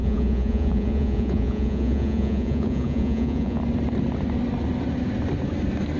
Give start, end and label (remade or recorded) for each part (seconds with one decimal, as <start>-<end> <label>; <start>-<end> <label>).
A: 0.0-3.6 remade; 3.6-6.0 recorded